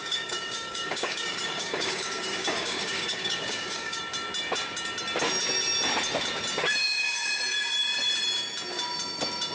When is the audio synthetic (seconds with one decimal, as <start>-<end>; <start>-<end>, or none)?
0.0-4.0; 6.8-7.4